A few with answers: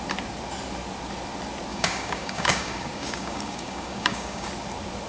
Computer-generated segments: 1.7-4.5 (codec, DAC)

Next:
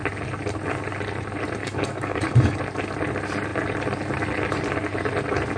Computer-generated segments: 1.6-2.6 (codec, DAC)

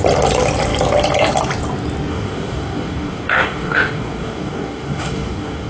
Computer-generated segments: 2.1-5.7 (codec, DAC)

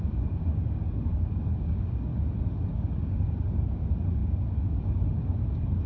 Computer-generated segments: 0.0-2.1 (codec, DAC); 2.7-5.9

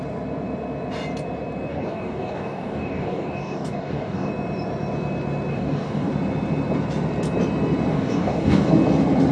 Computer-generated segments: 1.7-4.3 (codec, DAC); 5.5-6.1; 7.9-8.7

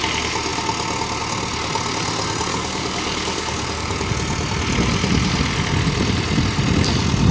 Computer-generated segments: 2.5-4.1 (codec, DAC)

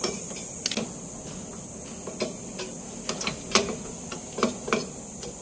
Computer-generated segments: none

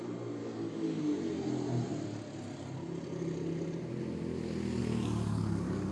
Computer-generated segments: 0.4-1.0 (codec, DAC); 4.8-5.9